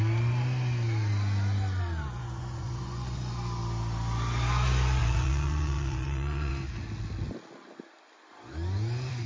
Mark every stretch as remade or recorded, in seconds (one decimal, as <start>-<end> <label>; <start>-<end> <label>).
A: 0.0-2.2 recorded; 2.2-3.3 remade; 3.3-5.0 recorded; 5.0-6.5 remade; 6.5-9.3 recorded